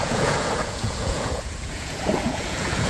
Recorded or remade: remade